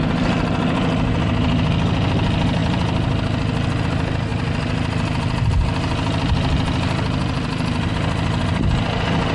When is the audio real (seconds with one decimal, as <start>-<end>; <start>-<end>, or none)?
0.0-9.3